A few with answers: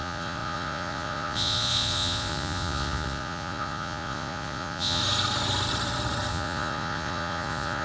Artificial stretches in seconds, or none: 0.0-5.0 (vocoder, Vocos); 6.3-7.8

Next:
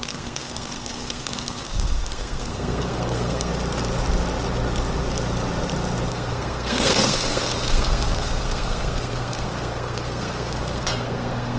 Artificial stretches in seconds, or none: 0.0-3.5 (codec, SNAC); 6.1-11.6

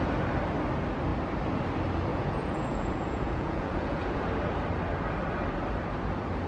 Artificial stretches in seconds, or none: 2.1-4.2 (vocoder, Vocos)

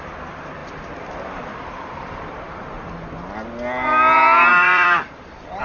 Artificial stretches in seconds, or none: 0.6-2.4 (vocoder, BigVGAN v2); 4.5-5.6

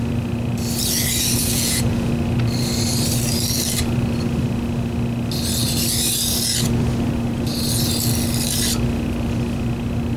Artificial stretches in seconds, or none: 1.4-2.1 (vocoder, Vocos)